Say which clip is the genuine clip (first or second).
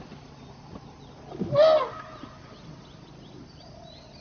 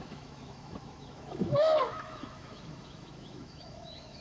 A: first